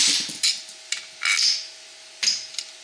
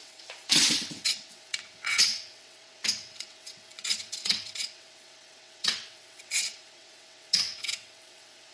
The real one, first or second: first